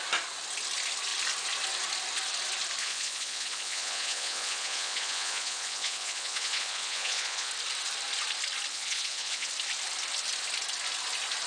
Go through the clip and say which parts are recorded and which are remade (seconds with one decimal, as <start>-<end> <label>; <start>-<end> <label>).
0.0-2.8 recorded; 2.8-7.5 remade; 7.5-8.7 recorded; 8.7-9.5 remade; 9.5-11.5 recorded